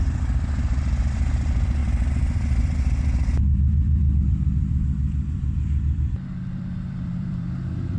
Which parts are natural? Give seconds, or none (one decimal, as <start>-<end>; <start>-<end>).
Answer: none